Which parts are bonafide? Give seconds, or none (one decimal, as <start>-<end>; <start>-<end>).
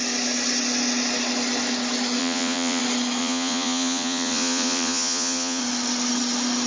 0.0-2.2; 2.8-3.2; 5.6-6.7